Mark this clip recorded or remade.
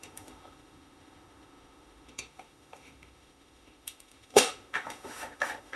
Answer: remade